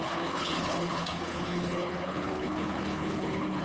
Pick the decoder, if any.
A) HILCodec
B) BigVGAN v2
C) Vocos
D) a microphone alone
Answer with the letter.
A